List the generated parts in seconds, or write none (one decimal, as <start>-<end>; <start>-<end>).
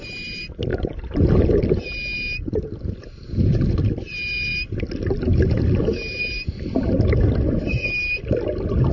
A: none